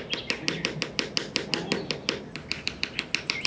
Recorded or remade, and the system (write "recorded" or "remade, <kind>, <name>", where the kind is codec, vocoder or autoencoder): recorded